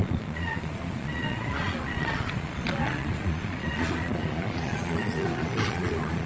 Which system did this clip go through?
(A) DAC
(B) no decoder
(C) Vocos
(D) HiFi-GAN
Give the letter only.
C